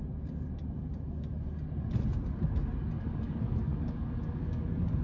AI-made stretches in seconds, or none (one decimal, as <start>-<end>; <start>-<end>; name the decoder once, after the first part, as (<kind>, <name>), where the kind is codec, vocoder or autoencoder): 3.0-5.0 (codec, DAC)